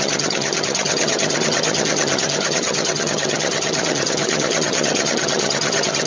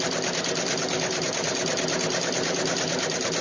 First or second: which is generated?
first